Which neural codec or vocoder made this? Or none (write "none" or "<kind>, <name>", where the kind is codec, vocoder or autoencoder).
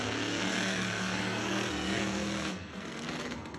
codec, SNAC